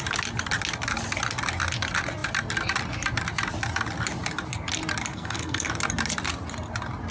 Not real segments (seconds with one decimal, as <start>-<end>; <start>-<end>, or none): 5.1-5.7

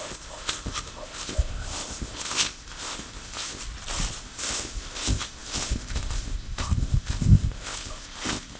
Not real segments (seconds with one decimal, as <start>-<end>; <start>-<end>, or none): 0.0-3.6; 4.2-8.6

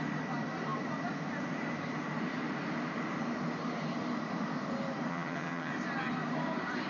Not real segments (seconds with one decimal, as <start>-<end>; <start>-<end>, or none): 5.1-5.7

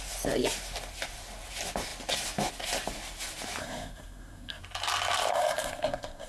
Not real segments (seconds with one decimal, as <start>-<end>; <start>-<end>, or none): 3.6-4.6; 5.3-6.3

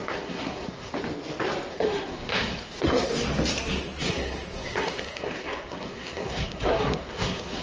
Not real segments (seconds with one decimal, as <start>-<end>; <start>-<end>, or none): 0.0-0.9; 1.7-3.1; 4.1-7.6

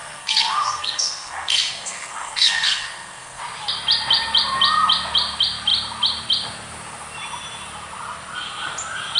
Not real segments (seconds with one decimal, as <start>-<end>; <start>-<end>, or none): 0.0-3.4